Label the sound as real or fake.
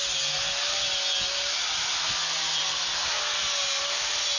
real